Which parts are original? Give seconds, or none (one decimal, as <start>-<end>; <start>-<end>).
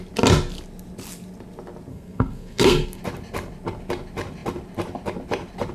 0.0-1.9; 3.0-5.7